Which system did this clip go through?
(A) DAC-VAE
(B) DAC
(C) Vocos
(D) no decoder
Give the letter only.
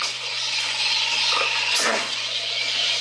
C